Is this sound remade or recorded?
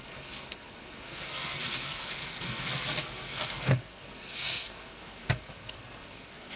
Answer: remade